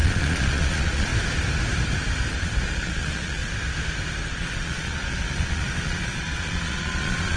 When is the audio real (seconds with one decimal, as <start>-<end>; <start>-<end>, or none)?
1.1-2.3; 3.4-4.3